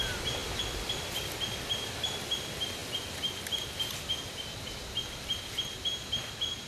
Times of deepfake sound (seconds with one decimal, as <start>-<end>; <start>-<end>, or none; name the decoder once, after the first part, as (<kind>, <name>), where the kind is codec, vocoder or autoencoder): 0.4-1.2 (vocoder, BigVGAN v2); 2.8-6.7